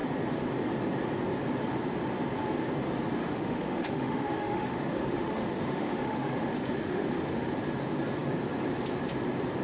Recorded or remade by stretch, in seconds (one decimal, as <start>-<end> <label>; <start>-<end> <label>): 0.0-3.2 recorded; 3.2-7.5 remade; 7.5-9.6 recorded